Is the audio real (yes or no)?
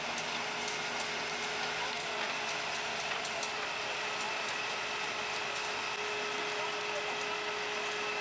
yes